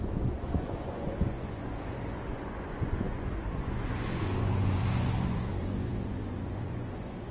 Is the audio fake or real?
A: fake